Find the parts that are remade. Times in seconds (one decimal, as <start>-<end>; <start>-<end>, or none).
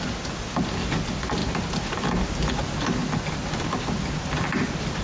1.4-2.4